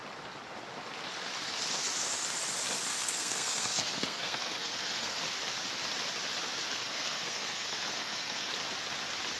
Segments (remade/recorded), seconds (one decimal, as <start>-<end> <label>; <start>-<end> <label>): 0.0-2.9 recorded; 2.9-5.2 remade; 5.2-6.7 recorded; 6.7-8.5 remade; 8.5-9.4 recorded